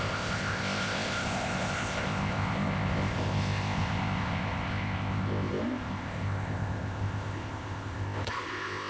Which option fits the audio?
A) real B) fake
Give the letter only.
B